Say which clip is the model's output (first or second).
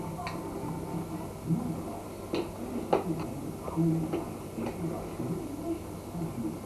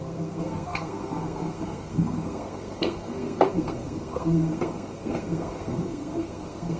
second